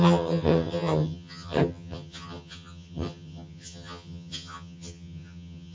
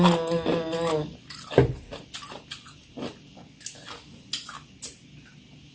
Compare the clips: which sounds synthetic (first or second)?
first